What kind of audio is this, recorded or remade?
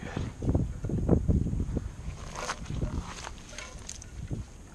recorded